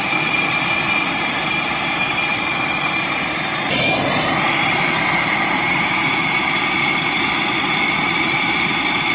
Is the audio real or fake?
fake